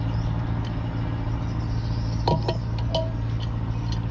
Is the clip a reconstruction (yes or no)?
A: no